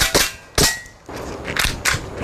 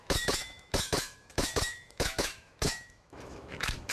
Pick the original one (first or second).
first